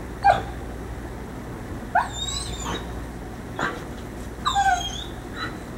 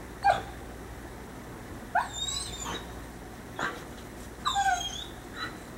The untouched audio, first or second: first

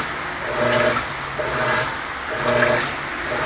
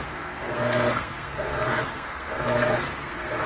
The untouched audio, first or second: first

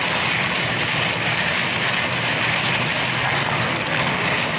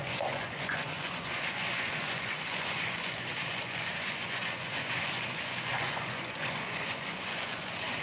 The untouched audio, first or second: first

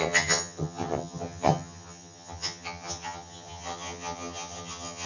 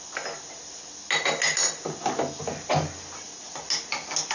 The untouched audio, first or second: second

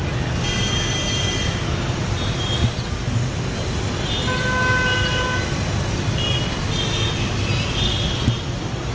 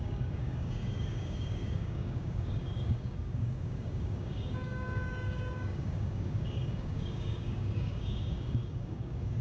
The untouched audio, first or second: first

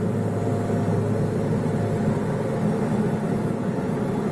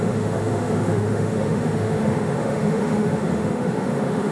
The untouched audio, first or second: first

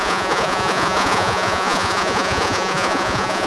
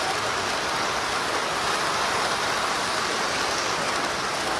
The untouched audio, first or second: second